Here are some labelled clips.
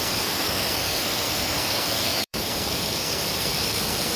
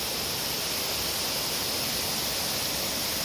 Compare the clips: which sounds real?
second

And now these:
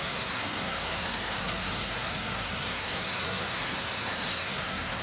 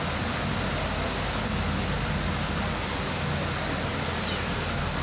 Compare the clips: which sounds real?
second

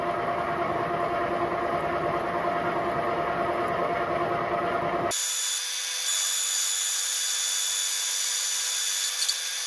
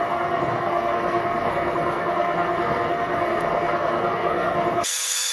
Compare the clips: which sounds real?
first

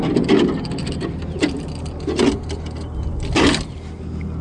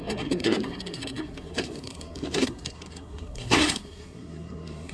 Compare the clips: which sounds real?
first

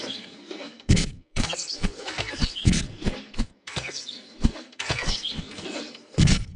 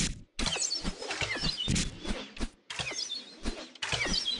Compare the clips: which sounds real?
second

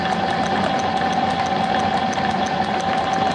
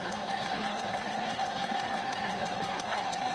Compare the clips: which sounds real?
first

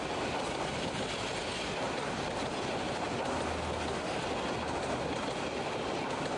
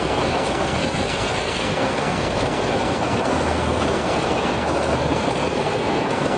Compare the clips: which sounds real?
first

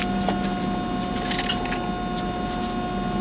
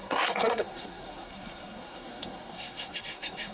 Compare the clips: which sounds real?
first